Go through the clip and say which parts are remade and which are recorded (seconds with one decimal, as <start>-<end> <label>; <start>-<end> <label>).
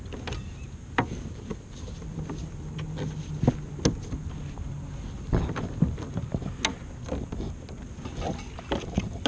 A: 0.0-9.3 recorded